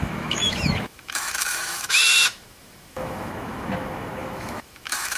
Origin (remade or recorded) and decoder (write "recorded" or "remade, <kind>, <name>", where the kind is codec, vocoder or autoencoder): remade, autoencoder, DAC-VAE